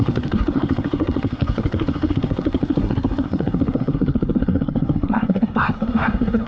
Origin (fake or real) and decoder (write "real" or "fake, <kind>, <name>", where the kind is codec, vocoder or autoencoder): fake, codec, SNAC